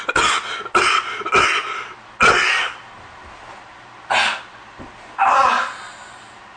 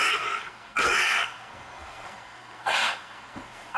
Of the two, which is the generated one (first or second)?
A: second